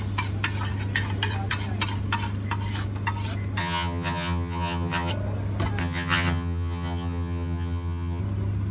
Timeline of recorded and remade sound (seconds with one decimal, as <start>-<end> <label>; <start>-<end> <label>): 0.0-3.6 recorded; 3.6-5.1 remade; 5.1-5.8 recorded; 5.8-8.2 remade; 8.2-8.7 recorded